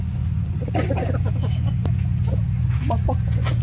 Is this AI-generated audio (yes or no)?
yes